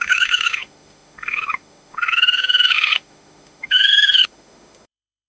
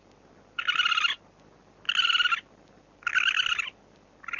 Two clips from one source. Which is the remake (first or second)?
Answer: first